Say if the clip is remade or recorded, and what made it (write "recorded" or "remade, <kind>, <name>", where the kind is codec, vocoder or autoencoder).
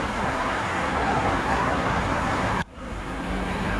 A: remade, codec, SNAC